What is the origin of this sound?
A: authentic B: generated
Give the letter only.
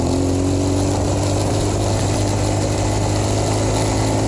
A